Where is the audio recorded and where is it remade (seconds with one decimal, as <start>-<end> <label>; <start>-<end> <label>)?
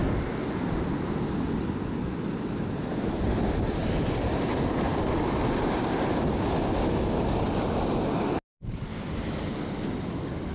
0.0-10.5 recorded